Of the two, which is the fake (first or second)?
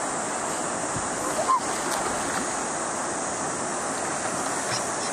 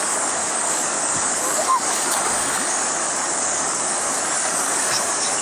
second